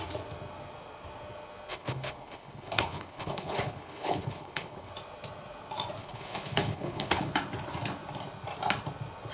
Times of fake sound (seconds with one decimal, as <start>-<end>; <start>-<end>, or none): 1.7-4.9; 6.0-7.3